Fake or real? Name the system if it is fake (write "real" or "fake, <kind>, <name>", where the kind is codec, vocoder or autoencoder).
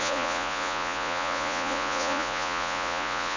fake, vocoder, Vocos